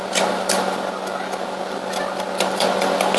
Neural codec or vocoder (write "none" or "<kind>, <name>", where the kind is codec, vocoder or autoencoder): none